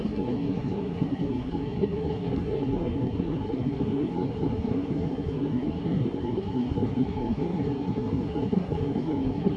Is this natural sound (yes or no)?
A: no